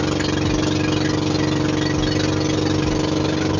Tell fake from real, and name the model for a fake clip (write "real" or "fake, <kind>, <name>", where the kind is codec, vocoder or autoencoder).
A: real